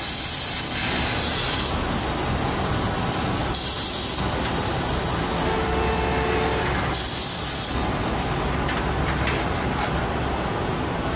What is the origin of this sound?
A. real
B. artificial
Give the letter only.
A